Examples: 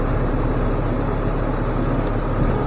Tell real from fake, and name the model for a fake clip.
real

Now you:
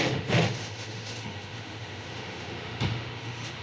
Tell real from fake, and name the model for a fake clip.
fake, autoencoder, DAC-VAE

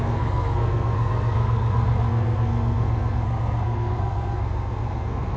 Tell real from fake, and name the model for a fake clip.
fake, codec, SNAC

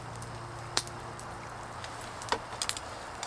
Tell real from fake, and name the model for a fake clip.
real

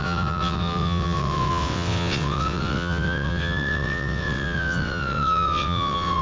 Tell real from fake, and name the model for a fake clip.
fake, vocoder, WaveNeXt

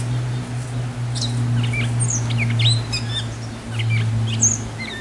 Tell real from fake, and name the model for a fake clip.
real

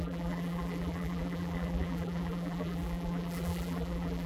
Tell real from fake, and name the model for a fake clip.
fake, vocoder, BigVGAN v2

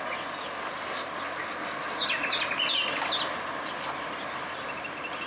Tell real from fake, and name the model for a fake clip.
real